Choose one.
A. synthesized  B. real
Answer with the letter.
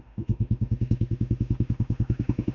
A